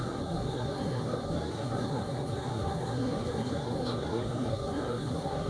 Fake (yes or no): yes